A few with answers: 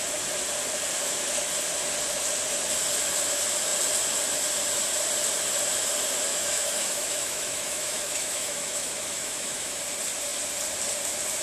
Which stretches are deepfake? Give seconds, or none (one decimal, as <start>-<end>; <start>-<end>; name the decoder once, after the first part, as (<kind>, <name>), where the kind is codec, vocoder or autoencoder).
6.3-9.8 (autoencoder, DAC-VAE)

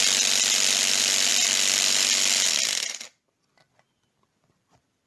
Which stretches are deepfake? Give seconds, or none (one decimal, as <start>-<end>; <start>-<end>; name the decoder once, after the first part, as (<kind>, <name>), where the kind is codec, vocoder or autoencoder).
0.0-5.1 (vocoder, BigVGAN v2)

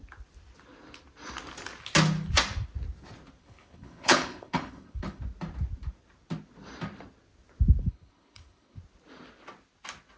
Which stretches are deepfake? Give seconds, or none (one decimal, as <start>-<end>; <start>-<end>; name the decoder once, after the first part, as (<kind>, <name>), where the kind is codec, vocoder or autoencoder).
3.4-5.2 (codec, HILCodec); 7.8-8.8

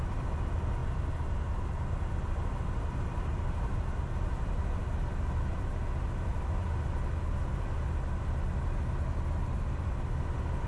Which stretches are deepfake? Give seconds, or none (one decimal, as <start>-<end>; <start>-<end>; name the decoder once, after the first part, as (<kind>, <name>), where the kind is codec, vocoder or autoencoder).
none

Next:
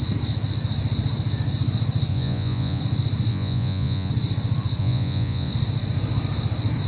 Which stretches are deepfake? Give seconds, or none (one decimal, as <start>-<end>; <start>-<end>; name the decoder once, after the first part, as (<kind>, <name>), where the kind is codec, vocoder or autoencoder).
2.1-2.8 (vocoder, Vocos); 3.3-4.1; 4.8-5.5